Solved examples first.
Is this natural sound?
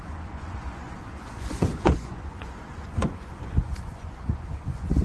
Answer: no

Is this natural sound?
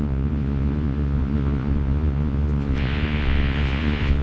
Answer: no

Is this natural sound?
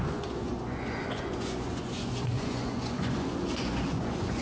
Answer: no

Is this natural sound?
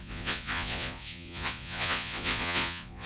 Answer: no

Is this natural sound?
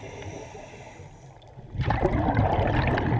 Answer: yes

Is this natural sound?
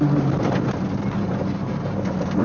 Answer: yes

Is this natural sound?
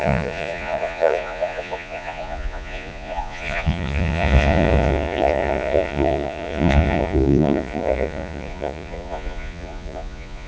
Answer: no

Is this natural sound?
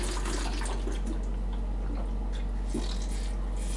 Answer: yes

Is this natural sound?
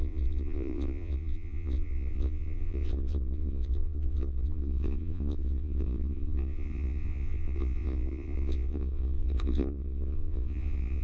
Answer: no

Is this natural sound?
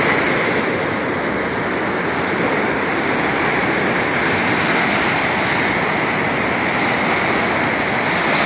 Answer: yes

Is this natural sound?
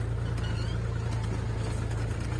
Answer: yes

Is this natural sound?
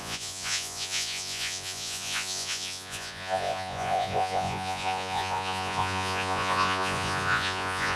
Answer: no